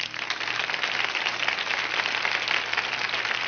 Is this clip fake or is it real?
real